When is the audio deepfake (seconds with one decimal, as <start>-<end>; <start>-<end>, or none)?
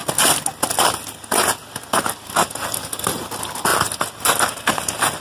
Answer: none